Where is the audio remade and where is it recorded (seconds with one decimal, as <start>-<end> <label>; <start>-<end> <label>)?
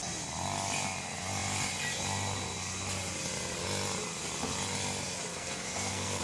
0.0-5.3 recorded; 5.3-6.2 remade